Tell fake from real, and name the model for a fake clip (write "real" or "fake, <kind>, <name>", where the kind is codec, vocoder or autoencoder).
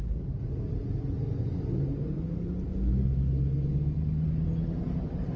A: real